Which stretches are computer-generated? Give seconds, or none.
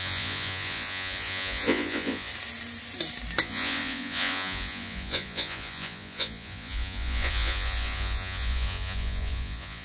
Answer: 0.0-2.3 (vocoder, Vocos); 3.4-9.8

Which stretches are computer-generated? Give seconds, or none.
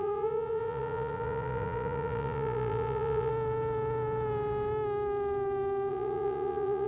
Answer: 0.0-3.3 (vocoder, Vocos); 5.9-6.9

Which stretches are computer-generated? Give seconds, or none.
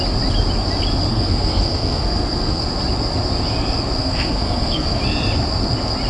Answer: 1.1-2.6 (codec, SNAC); 4.0-5.0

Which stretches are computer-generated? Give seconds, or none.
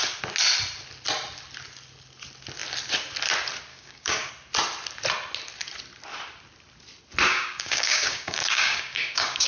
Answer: 3.7-4.3 (codec, DAC); 7.3-9.5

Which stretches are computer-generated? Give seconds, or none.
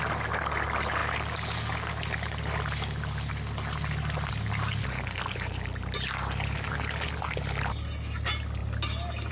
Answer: none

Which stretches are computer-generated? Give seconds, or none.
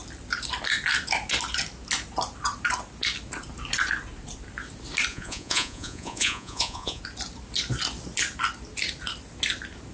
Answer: 5.1-7.0 (vocoder, Vocos)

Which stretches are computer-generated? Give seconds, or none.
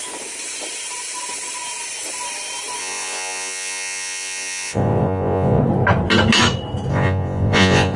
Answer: 2.8-5.6 (vocoder, Vocos); 6.9-8.0